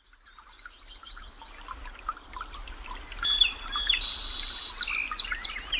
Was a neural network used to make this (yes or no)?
no